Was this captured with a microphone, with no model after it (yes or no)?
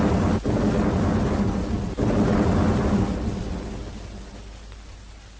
yes